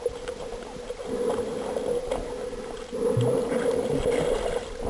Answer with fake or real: real